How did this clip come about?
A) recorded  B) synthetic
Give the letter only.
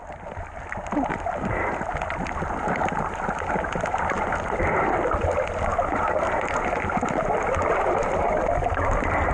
A